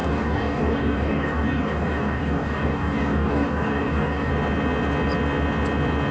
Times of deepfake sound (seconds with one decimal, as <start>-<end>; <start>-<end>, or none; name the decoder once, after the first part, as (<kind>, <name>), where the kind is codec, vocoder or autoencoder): 0.0-4.3 (codec, DAC)